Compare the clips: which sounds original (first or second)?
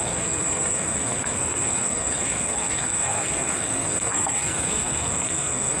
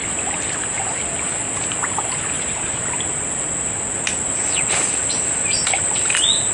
second